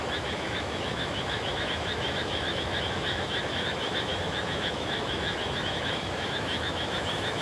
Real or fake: fake